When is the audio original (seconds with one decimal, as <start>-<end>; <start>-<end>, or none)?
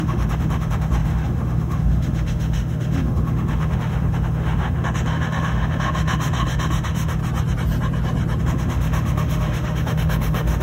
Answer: 7.2-8.4